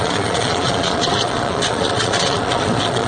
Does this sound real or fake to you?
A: fake